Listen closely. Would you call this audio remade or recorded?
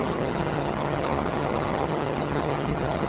remade